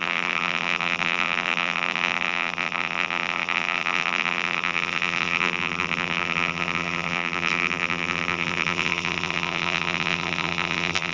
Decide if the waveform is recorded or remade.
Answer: remade